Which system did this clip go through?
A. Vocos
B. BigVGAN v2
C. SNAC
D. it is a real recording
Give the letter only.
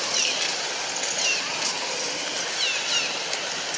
D